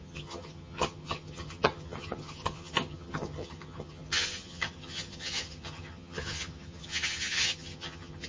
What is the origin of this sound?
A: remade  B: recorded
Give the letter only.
A